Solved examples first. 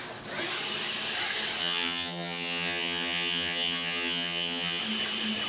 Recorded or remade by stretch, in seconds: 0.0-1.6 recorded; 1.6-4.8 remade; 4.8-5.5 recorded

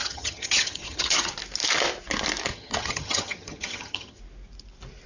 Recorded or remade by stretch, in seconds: 0.0-1.3 remade; 1.3-2.5 recorded; 2.5-4.2 remade; 4.2-5.1 recorded

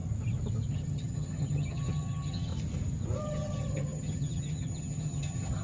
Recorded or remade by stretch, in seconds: 0.0-0.7 recorded; 0.7-2.5 remade; 2.5-3.2 recorded; 3.2-5.6 remade